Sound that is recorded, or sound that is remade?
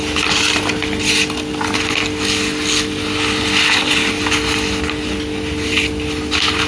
recorded